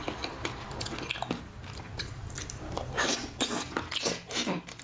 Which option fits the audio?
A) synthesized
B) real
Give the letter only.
B